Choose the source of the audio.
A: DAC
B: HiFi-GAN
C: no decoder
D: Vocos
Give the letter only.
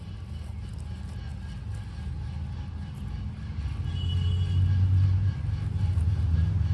C